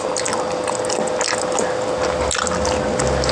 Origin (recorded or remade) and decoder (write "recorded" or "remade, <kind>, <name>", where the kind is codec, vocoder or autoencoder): recorded